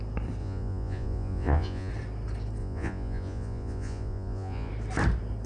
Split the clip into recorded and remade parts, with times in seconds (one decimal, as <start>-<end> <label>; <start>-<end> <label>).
0.0-0.4 recorded; 0.4-1.9 remade; 1.9-2.6 recorded; 2.6-4.7 remade; 4.7-5.5 recorded